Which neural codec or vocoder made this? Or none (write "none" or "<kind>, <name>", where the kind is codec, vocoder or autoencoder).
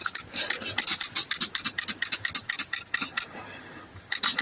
none